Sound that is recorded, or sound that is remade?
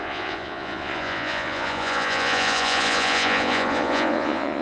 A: remade